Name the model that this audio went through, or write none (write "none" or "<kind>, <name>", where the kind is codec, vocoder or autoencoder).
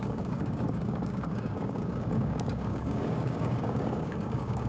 codec, DAC